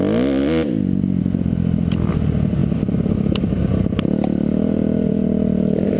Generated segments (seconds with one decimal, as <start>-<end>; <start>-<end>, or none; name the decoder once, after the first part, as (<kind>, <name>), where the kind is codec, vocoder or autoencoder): 2.6-5.1 (vocoder, BigVGAN v2)